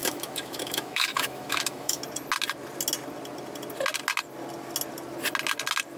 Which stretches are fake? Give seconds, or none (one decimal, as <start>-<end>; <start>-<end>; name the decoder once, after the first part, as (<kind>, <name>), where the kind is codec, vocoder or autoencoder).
0.0-2.0 (autoencoder, DAC-VAE)